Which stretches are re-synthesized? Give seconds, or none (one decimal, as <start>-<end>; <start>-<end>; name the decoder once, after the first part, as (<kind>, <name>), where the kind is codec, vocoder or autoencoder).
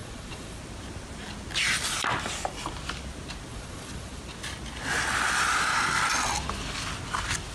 0.0-0.6 (vocoder, Vocos); 3.5-4.2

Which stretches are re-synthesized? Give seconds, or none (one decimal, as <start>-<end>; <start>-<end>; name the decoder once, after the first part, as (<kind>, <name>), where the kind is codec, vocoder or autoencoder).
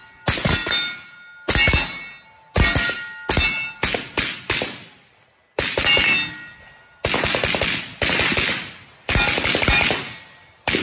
none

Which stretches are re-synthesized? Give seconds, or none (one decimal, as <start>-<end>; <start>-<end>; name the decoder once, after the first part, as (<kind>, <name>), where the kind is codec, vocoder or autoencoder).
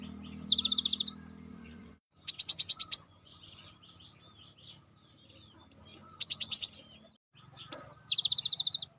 1.5-3.7 (vocoder, Vocos); 5.9-6.8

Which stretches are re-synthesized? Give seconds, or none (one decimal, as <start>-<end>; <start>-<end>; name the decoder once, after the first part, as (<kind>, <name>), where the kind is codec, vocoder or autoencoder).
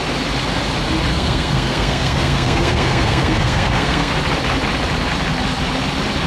1.1-4.1 (codec, SNAC)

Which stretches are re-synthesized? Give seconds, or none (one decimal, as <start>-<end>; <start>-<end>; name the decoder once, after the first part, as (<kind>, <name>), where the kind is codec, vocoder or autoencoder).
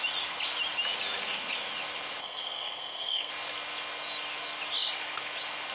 2.2-3.3 (codec, SNAC)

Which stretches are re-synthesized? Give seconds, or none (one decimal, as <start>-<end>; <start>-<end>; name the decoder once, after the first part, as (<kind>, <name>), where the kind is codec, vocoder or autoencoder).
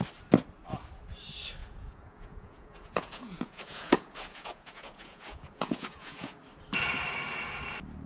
1.6-6.4 (vocoder, Vocos)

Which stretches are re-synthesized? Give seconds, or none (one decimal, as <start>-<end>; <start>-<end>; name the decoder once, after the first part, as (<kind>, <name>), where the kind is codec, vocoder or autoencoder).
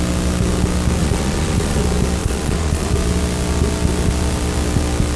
1.0-1.8 (vocoder, Vocos); 2.2-2.9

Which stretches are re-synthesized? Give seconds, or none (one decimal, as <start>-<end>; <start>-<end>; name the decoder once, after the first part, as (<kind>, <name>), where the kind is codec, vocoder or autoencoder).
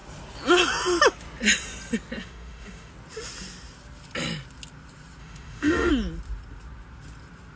2.2-2.9 (autoencoder, DAC-VAE); 5.2-5.9